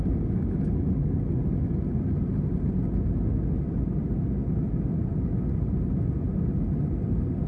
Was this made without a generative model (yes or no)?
yes